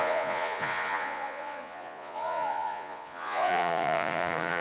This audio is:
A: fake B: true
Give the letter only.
A